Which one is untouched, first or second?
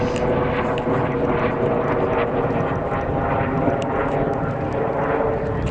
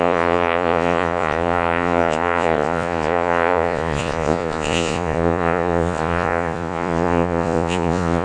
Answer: first